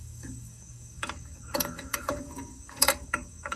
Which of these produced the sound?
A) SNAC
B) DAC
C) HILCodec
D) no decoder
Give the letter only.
B